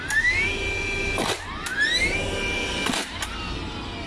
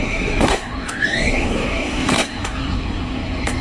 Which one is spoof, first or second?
second